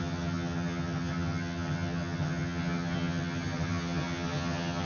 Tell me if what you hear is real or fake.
fake